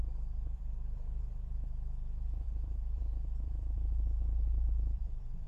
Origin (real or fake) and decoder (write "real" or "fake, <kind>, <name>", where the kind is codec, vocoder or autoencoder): fake, vocoder, BigVGAN v2